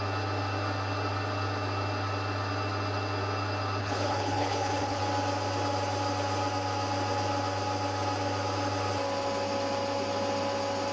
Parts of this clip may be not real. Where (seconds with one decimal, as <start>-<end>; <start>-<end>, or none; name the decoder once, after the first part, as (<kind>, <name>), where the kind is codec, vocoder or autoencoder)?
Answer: 3.8-5.0 (codec, HILCodec)